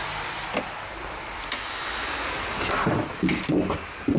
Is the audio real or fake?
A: real